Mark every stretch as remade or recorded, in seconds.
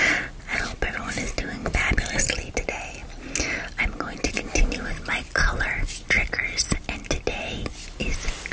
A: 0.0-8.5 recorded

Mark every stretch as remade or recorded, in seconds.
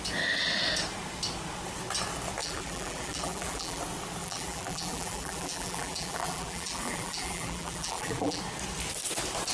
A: 0.0-2.4 recorded; 2.4-3.8 remade; 3.8-4.2 recorded; 4.2-8.4 remade; 8.4-9.5 recorded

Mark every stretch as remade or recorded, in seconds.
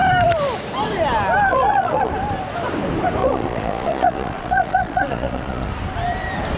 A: 0.0-1.5 recorded; 1.5-2.1 remade; 2.1-3.2 recorded; 3.2-5.7 remade; 5.7-6.6 recorded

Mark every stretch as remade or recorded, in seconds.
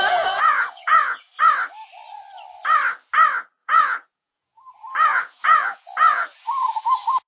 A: 0.0-1.4 remade; 1.4-3.6 recorded; 3.6-7.3 remade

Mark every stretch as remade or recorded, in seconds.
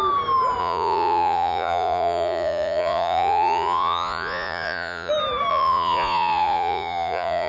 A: 0.0-0.6 recorded; 0.6-5.1 remade; 5.1-5.5 recorded; 5.5-7.5 remade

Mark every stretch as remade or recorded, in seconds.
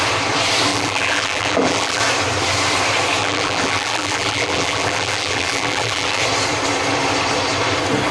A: 0.0-0.7 recorded; 0.7-2.0 remade; 2.0-3.2 recorded; 3.2-6.2 remade; 6.2-8.1 recorded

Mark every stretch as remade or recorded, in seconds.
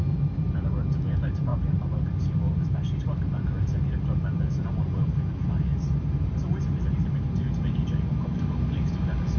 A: 0.0-9.4 recorded